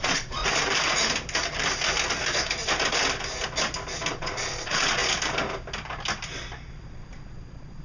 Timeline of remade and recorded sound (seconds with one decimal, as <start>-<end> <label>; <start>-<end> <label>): 0.0-0.4 remade; 0.4-4.1 recorded; 4.1-5.0 remade; 5.0-6.9 recorded; 6.9-7.8 remade